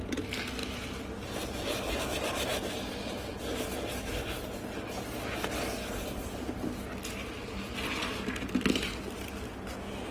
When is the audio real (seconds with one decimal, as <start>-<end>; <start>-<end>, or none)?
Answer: 0.0-10.1